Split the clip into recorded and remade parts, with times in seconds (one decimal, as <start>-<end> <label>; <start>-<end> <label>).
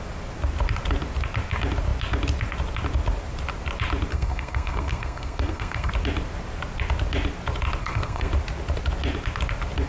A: 0.0-4.1 recorded; 4.1-5.9 remade; 5.9-7.8 recorded; 7.8-8.3 remade; 8.3-9.9 recorded